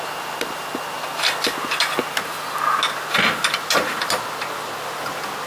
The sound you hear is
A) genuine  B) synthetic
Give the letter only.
A